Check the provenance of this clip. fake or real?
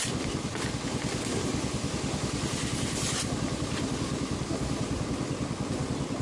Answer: real